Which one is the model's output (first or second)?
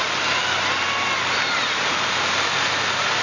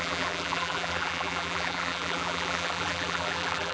second